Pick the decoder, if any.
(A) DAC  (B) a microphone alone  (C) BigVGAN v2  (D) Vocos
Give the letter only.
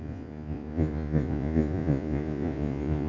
D